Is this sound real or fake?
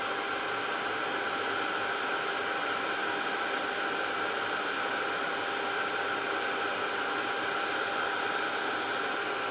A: real